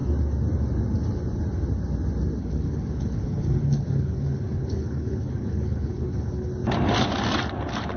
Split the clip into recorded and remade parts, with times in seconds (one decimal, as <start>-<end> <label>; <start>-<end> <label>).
0.0-2.4 recorded; 2.4-6.5 remade; 6.5-8.0 recorded